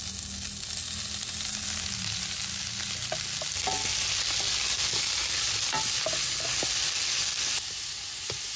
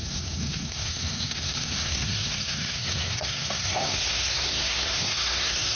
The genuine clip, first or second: first